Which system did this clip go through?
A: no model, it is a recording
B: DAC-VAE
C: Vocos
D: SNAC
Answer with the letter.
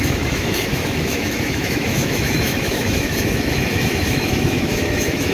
B